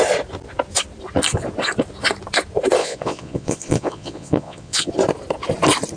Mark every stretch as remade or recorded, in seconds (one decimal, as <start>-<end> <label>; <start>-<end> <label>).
0.0-2.8 recorded; 2.8-4.9 remade; 4.9-6.0 recorded